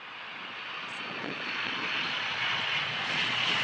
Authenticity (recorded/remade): remade